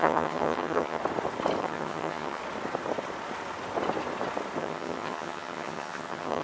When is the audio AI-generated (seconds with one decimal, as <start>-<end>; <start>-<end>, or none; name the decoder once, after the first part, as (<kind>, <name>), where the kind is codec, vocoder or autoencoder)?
0.0-1.0 (vocoder, HiFi-GAN); 1.6-2.4; 4.6-6.4